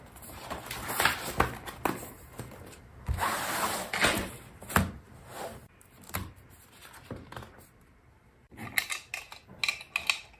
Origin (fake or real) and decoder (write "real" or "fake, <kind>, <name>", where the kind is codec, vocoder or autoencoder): real